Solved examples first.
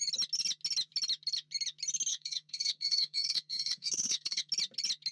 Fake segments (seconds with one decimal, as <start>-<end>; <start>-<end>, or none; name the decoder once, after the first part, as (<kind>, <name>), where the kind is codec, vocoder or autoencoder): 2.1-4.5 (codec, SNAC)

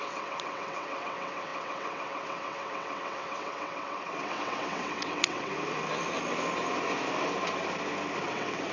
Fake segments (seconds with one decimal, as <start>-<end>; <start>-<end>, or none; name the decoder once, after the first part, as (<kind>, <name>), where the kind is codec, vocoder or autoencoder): 0.0-5.5 (vocoder, WaveNeXt); 8.2-8.7

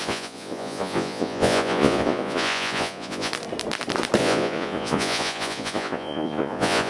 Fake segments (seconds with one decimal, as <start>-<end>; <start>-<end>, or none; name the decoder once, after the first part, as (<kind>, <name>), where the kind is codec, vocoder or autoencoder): 0.0-3.3 (vocoder, Vocos); 4.2-6.9